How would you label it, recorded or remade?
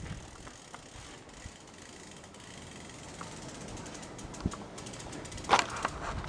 recorded